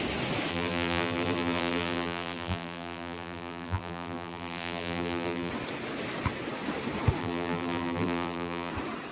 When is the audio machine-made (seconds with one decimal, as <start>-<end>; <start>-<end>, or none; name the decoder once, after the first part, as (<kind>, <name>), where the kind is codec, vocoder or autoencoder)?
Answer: 0.5-5.5 (vocoder, BigVGAN v2); 7.2-8.7